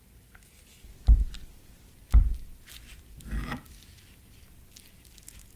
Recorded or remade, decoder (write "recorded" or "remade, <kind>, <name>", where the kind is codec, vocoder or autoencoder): recorded